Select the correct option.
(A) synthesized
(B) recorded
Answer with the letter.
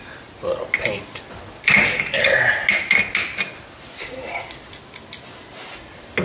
B